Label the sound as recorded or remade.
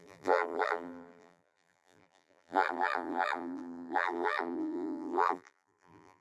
remade